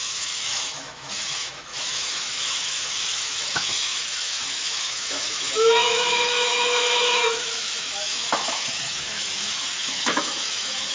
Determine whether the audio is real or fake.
fake